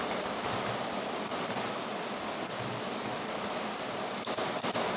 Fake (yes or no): no